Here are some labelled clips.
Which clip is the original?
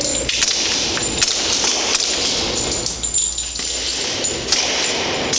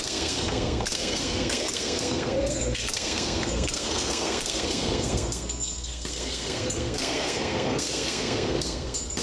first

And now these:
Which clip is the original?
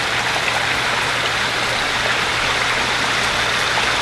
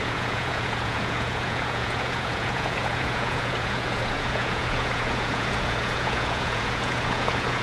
first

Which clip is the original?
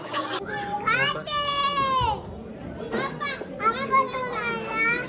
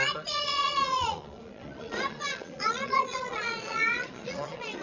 first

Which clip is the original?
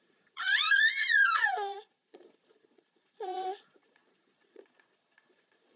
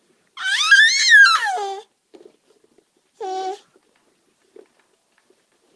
second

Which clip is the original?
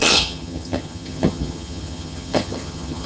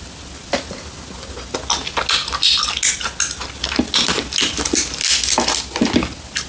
second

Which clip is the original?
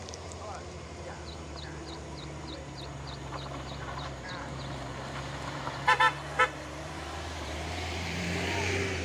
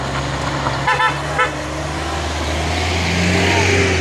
second